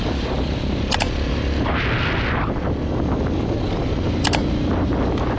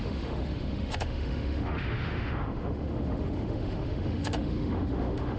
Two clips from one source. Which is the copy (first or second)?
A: second